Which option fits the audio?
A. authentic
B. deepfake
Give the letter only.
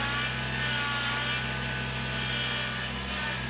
A